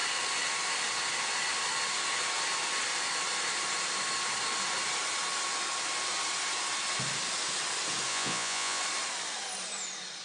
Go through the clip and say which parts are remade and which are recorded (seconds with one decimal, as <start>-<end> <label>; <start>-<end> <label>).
0.0-8.1 recorded; 8.1-8.8 remade; 8.8-10.2 recorded